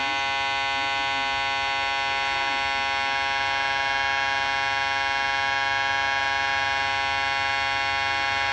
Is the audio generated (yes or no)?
no